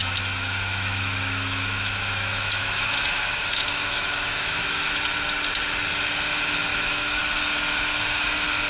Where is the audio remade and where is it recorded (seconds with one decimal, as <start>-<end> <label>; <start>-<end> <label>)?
0.0-5.0 remade; 5.0-6.7 recorded; 6.7-7.2 remade; 7.2-8.7 recorded